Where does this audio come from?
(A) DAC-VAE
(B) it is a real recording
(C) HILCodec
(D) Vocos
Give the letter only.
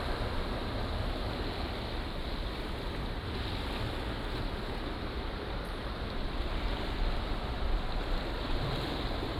B